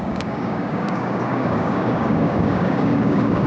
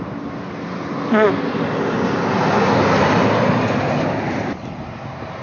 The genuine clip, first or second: second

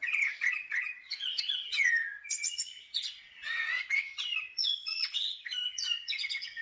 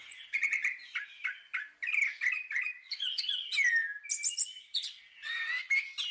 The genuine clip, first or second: second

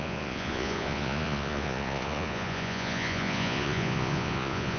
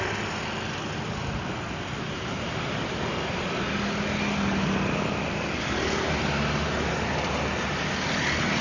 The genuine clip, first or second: second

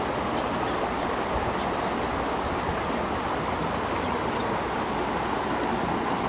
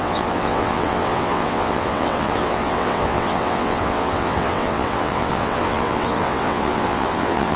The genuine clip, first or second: first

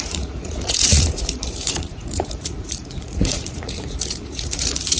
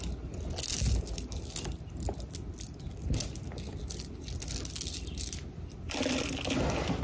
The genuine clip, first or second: second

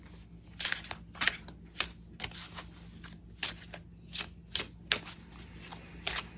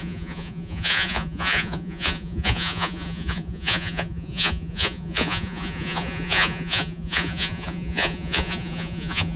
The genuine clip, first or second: first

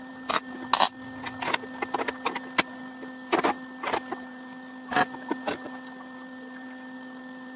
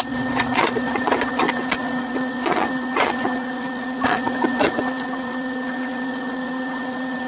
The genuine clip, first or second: first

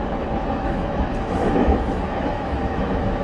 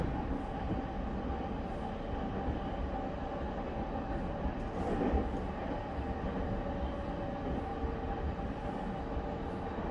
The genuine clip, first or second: second